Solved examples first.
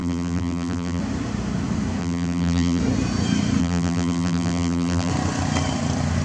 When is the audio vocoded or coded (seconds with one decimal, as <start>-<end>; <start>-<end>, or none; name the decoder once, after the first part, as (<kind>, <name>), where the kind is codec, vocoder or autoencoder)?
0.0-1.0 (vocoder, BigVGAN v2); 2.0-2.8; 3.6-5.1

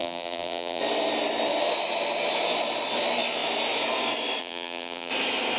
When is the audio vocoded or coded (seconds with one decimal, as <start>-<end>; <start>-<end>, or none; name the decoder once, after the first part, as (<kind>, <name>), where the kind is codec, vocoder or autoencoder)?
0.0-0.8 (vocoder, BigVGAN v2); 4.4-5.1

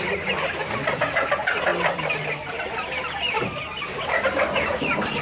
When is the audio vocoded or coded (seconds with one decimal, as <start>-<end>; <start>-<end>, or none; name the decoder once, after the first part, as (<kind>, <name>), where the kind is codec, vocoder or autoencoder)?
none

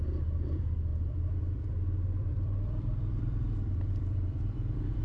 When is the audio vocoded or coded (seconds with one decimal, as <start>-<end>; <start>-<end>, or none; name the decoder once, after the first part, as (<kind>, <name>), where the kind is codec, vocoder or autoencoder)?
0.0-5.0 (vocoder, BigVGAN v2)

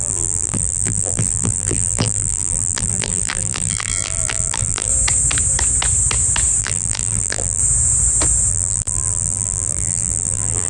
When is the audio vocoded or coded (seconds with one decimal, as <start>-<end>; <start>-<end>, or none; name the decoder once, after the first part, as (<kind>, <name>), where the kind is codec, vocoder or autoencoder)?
0.0-4.9 (vocoder, BigVGAN v2); 6.6-7.6; 8.5-10.7